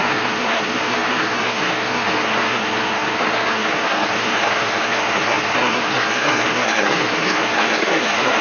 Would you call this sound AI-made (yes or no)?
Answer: yes